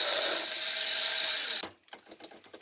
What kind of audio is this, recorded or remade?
recorded